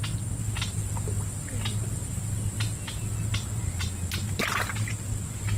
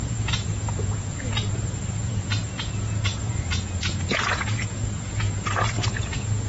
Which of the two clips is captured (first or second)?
first